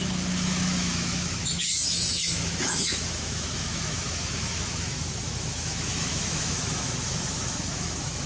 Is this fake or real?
fake